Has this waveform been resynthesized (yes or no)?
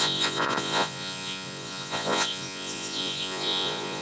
yes